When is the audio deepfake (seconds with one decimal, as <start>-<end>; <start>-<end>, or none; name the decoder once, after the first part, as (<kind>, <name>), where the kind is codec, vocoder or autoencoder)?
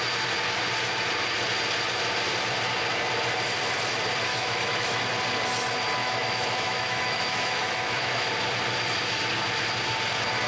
4.3-5.0 (autoencoder, DAC-VAE); 6.0-8.3